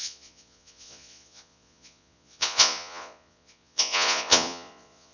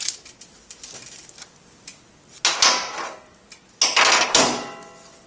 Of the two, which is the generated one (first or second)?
first